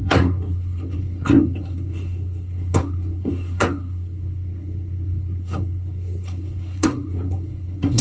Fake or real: fake